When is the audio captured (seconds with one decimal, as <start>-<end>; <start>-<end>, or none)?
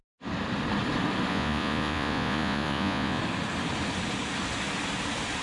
0.0-1.3; 3.2-5.4